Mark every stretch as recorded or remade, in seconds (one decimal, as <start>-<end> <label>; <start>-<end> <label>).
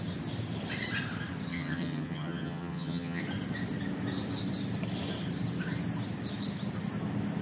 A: 0.0-1.5 recorded; 1.5-3.2 remade; 3.2-7.4 recorded